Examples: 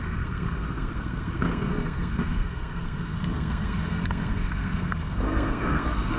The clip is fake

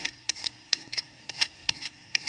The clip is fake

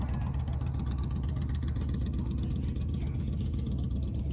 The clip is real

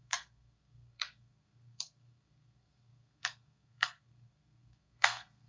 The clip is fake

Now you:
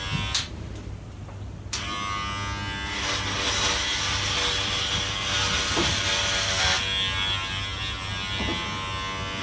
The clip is real